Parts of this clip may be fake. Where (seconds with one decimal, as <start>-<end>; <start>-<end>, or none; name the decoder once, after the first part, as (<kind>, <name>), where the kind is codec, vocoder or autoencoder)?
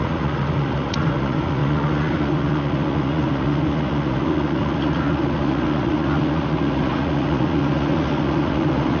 0.0-9.0 (vocoder, Vocos)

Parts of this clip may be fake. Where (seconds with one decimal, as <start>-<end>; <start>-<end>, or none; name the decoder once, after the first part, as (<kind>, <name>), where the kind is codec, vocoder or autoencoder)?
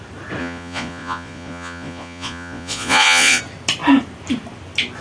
0.4-3.4 (vocoder, Vocos)